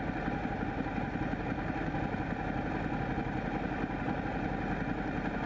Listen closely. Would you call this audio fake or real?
real